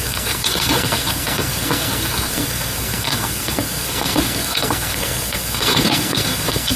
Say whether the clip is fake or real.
fake